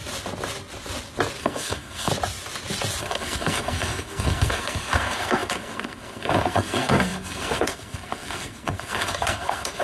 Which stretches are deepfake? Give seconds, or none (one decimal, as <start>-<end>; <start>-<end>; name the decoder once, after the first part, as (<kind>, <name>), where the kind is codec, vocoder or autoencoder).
1.4-2.1 (codec, SNAC); 3.0-9.8